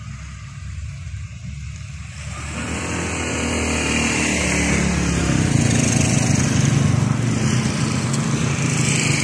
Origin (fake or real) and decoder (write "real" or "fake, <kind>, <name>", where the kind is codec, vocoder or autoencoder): real